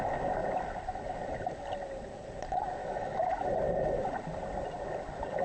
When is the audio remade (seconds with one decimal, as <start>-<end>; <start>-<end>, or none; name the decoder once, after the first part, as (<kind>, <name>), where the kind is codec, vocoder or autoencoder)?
2.8-3.5 (autoencoder, DAC-VAE)